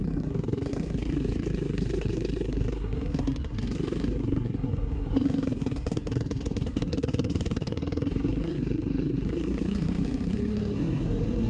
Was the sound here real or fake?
fake